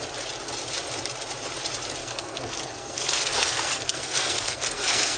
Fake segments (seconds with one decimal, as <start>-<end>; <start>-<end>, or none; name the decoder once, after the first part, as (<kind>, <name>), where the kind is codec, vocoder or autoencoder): 2.0-5.2 (codec, SNAC)